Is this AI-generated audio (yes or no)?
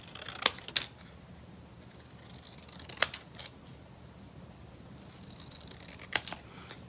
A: no